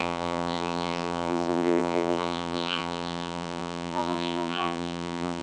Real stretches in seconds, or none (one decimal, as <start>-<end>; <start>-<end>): none